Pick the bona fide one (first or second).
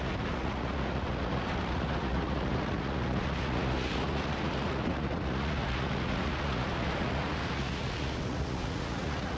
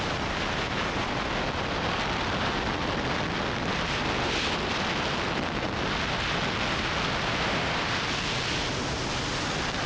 second